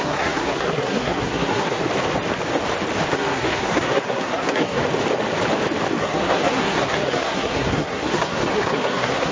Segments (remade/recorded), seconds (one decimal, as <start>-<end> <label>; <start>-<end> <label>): 0.0-1.8 remade; 1.8-3.1 recorded; 3.1-4.8 remade; 4.8-6.0 recorded; 6.0-9.3 remade